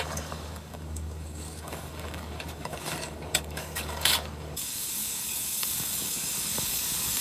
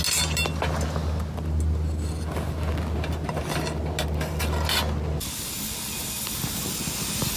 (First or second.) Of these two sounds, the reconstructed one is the first